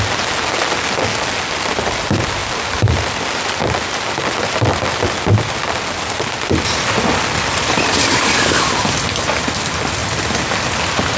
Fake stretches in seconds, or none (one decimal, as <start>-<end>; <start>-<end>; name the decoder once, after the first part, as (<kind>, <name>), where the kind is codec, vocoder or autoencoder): none